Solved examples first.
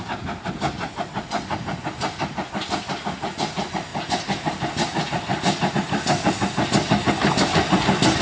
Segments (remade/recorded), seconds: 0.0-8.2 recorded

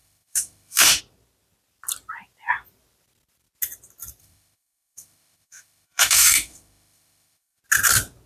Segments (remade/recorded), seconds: 0.0-1.0 remade; 1.0-4.2 recorded; 4.2-7.6 remade; 7.6-8.3 recorded

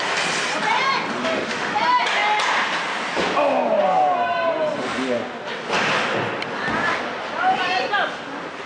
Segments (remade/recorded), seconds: 0.0-1.2 recorded; 1.2-1.8 remade; 1.8-8.7 recorded

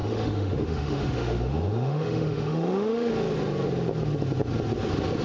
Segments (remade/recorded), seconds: 0.0-3.1 remade; 3.1-5.2 recorded